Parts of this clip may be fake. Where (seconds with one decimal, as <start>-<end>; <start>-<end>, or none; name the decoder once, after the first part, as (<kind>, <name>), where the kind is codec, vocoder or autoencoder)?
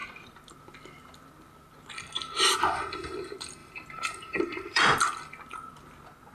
3.6-5.0 (vocoder, BigVGAN v2)